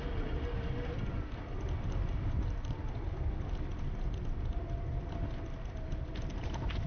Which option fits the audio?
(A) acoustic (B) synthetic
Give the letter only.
A